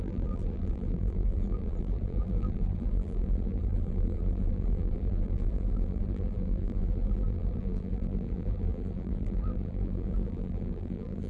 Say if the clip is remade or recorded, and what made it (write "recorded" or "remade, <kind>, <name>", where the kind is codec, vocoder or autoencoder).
remade, vocoder, BigVGAN v2